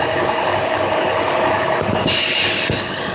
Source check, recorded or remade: remade